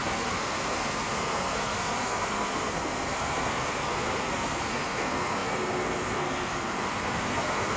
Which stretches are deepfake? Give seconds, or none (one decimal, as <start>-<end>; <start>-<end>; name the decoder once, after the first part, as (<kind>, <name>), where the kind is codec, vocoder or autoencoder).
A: 0.0-7.8 (codec, SNAC)